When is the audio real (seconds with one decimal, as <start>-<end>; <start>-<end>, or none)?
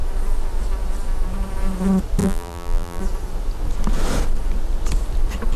0.0-2.2; 3.0-5.6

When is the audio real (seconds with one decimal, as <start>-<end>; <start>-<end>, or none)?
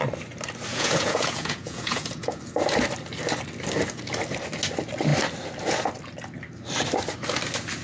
0.0-0.7; 2.4-7.8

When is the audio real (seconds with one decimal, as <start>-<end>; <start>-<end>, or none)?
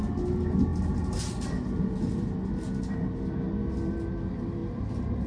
0.0-5.3